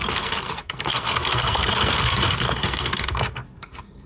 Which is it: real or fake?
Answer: fake